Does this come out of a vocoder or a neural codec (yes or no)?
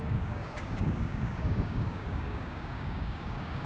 yes